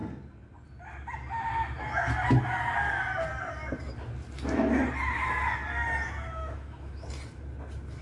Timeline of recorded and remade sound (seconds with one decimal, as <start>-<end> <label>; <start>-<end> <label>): 0.0-6.4 recorded; 6.4-7.1 remade; 7.1-8.0 recorded